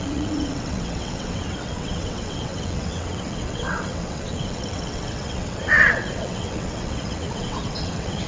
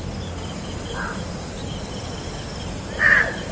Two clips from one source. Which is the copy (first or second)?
first